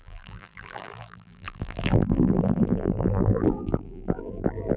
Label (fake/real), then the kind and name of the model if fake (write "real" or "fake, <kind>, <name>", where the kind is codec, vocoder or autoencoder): fake, vocoder, BigVGAN v2